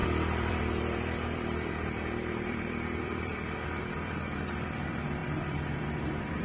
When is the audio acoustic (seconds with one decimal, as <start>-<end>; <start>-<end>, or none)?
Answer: 3.3-3.8